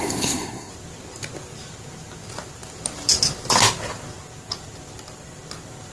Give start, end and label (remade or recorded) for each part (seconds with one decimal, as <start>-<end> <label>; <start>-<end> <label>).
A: 0.0-0.7 remade; 0.7-5.9 recorded